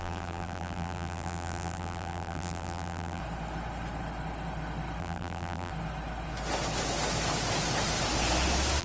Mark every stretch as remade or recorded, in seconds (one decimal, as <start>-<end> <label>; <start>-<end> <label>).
0.0-3.2 remade; 3.2-5.0 recorded; 5.0-5.7 remade; 5.7-8.8 recorded